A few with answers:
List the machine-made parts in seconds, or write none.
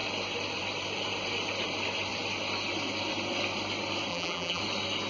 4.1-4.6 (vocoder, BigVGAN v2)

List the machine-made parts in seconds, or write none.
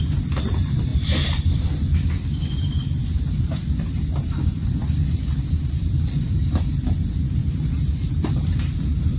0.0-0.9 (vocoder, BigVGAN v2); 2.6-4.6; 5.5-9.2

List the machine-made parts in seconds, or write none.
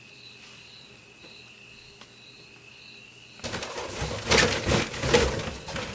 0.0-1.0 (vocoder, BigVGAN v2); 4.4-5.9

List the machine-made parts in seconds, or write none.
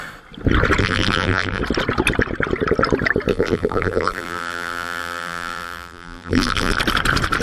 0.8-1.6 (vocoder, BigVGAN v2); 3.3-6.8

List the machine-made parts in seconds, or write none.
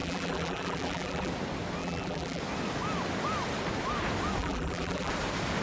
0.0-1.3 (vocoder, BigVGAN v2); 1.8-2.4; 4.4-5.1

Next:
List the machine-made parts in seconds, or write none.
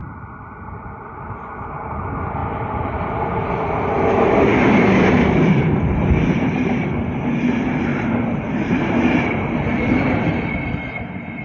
0.0-1.4 (vocoder, BigVGAN v2); 2.4-3.5; 7.9-8.8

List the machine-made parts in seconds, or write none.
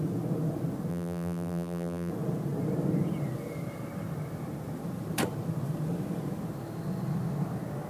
0.9-2.1 (vocoder, BigVGAN v2)